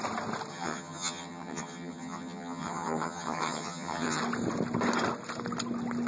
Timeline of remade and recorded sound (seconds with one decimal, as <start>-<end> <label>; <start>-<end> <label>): 0.0-0.5 recorded; 0.5-4.2 remade; 4.2-6.1 recorded